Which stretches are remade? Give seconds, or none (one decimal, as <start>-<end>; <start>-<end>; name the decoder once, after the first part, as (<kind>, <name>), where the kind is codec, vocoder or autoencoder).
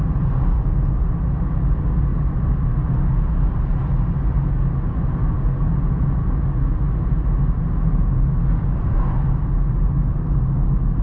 none